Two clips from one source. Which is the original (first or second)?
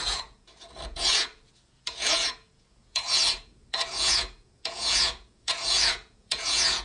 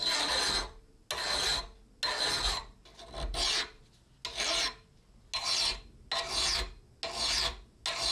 second